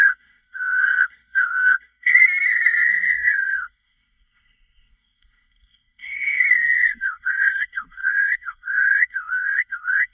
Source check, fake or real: fake